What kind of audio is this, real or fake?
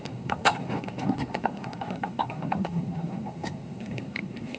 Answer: fake